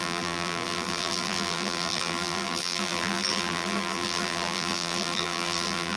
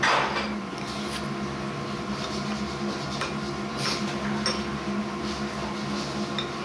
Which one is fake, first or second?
first